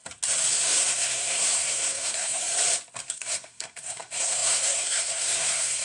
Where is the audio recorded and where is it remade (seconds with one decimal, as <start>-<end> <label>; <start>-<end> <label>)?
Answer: 0.0-0.5 recorded; 0.5-2.4 remade; 2.4-3.1 recorded; 3.1-5.8 remade